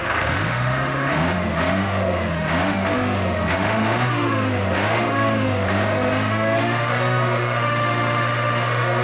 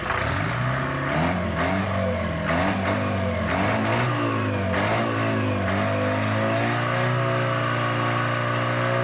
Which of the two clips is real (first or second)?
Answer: second